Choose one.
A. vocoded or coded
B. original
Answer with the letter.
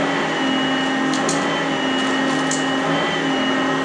B